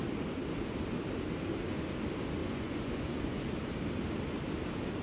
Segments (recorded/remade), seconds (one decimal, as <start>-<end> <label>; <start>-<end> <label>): 0.0-2.4 recorded; 2.4-3.4 remade; 3.4-5.0 recorded